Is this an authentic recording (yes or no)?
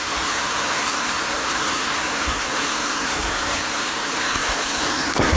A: no